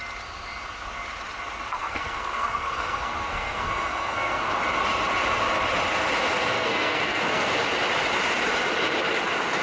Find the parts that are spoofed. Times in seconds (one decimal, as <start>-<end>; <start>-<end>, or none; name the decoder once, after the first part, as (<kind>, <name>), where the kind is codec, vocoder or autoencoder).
1.7-4.5 (codec, SNAC); 6.5-7.5